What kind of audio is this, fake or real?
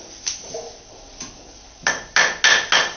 real